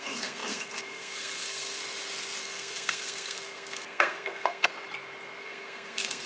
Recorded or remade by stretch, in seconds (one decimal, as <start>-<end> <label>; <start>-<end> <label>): 0.0-1.8 remade; 1.8-2.4 recorded; 2.4-4.7 remade; 4.7-5.4 recorded; 5.4-6.3 remade